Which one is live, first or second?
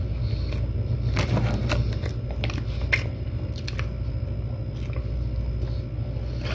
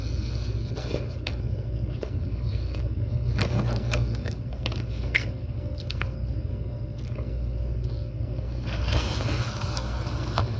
first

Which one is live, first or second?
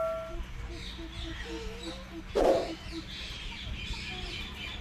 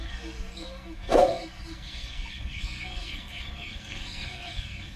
first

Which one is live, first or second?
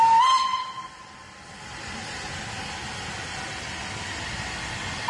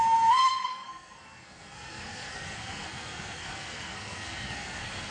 first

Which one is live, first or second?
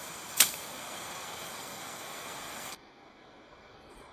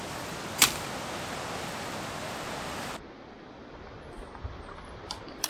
second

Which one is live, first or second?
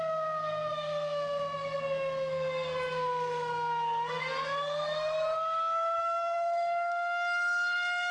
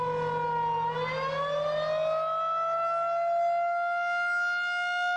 second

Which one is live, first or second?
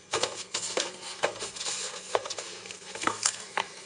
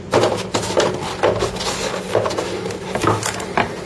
second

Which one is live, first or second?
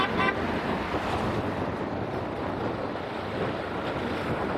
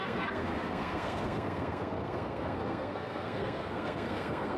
first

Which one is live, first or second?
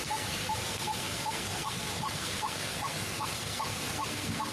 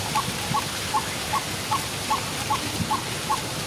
second